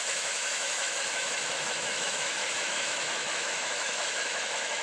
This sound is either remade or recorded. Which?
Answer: remade